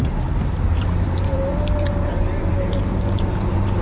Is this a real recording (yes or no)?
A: no